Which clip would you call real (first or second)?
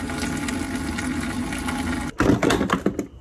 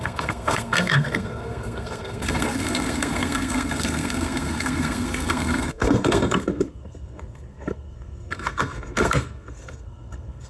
first